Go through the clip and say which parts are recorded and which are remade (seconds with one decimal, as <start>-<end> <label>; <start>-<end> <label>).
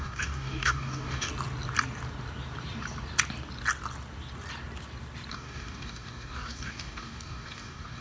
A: 0.0-1.3 remade; 1.3-5.3 recorded; 5.3-8.0 remade